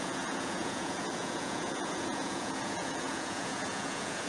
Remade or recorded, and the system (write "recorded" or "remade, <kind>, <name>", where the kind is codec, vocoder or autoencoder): remade, vocoder, Vocos